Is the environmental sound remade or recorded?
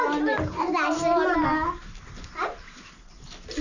recorded